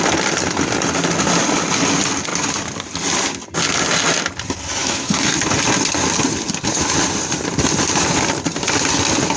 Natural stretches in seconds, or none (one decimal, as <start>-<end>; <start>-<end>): 0.0-4.8; 5.4-9.4